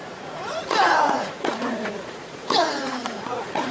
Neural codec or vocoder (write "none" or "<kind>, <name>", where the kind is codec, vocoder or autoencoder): vocoder, Vocos